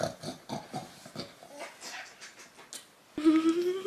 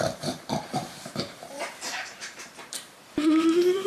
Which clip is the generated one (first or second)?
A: second